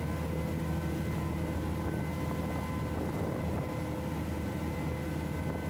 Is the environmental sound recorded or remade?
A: recorded